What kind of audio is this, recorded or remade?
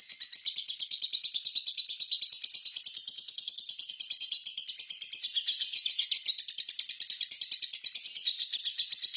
recorded